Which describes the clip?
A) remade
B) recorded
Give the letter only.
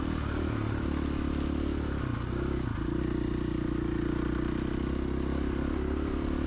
B